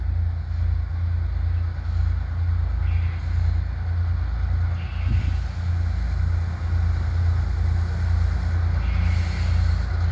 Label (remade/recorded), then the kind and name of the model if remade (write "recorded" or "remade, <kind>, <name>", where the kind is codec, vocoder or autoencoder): recorded